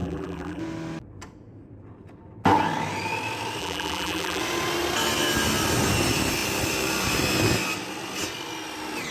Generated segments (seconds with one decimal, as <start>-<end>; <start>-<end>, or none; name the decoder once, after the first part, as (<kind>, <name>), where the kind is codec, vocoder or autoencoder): 0.0-0.6 (vocoder, BigVGAN v2); 3.6-4.4